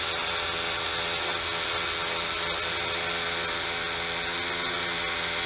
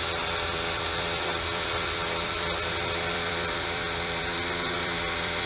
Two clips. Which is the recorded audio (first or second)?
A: first